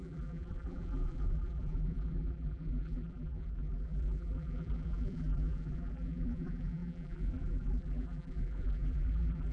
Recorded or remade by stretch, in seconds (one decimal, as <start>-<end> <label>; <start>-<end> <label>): 0.0-9.5 remade